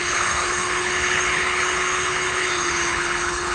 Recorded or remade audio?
remade